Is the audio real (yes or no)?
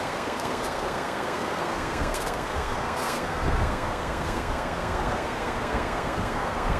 no